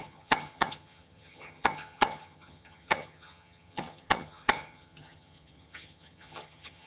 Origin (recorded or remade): remade